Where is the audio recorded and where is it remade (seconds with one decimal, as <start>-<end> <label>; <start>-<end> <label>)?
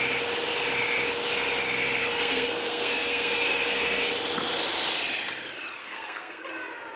0.0-2.0 recorded; 2.0-4.1 remade; 4.1-5.8 recorded; 5.8-6.5 remade; 6.5-7.0 recorded